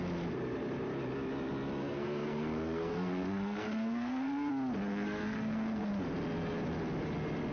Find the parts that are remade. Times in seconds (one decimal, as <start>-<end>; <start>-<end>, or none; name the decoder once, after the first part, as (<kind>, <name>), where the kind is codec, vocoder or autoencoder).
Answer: 1.8-4.5 (codec, SNAC); 4.9-5.9